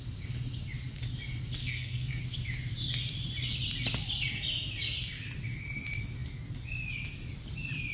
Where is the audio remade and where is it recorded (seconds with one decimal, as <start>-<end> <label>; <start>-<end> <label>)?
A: 0.0-1.6 recorded; 1.6-2.2 remade; 2.2-7.9 recorded